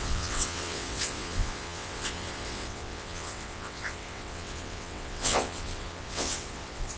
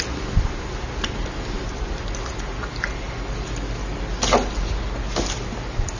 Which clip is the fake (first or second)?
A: first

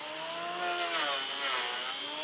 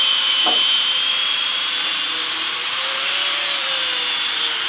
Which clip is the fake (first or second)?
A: second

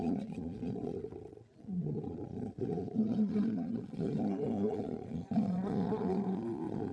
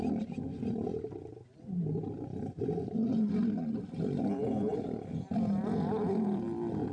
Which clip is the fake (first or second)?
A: first